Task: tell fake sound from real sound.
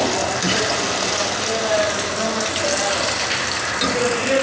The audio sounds real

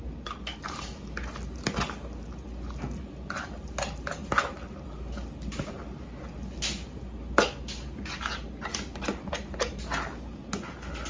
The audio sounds real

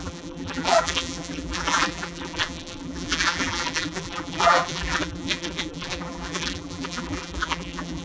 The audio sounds fake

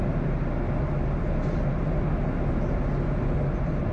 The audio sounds real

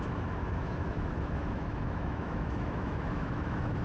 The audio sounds fake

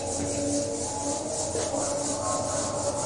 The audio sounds real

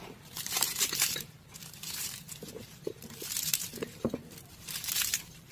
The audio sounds fake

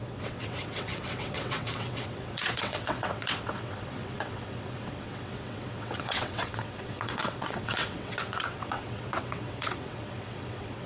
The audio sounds fake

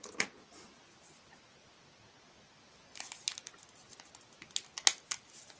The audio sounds real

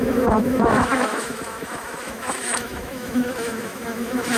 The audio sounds fake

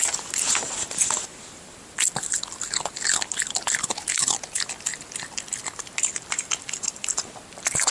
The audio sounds real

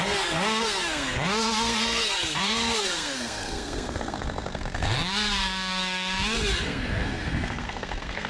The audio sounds fake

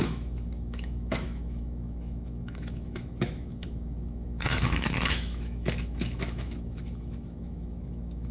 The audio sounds fake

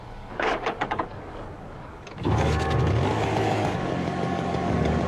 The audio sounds fake